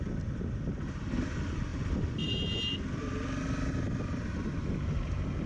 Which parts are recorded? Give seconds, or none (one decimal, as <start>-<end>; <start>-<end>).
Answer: 0.0-5.5